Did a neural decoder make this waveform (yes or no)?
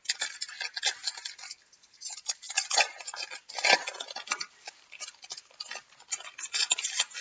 no